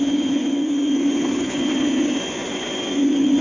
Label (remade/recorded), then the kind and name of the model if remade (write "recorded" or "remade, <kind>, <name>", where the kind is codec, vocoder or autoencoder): remade, vocoder, Vocos